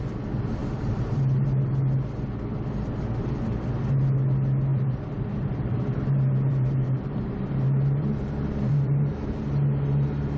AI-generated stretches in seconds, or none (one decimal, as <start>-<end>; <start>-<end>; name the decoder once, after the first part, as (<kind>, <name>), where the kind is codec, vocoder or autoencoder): 0.6-1.7 (vocoder, BigVGAN v2); 4.7-9.7